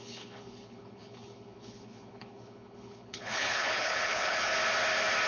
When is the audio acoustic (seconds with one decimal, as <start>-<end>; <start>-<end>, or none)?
4.5-5.3